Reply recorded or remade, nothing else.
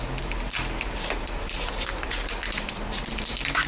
remade